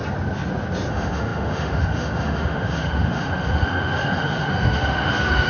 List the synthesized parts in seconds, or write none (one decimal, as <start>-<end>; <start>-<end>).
0.9-5.5